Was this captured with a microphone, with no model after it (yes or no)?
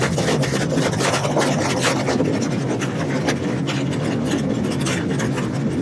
yes